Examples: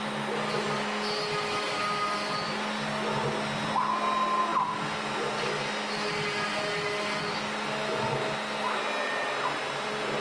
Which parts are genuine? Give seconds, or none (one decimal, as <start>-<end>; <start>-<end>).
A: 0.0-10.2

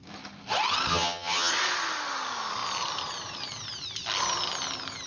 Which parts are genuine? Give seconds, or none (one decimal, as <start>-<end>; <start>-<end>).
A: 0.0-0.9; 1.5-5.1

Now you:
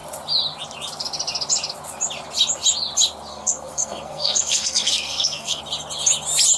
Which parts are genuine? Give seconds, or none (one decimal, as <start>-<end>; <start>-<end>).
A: 0.0-3.3; 5.6-6.6